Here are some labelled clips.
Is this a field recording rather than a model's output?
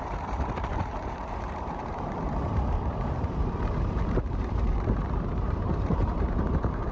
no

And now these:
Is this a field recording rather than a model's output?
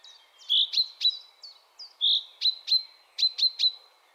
yes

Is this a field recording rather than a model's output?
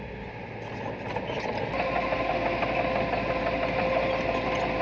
yes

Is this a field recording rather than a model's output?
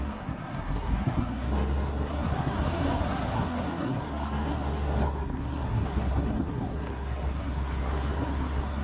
no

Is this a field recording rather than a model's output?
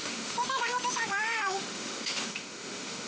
no